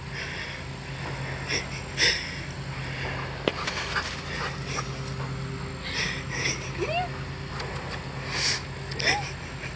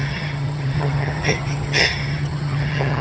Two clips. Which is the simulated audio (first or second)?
second